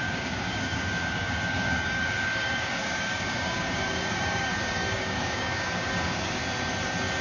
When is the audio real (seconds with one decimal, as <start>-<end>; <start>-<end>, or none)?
6.4-7.2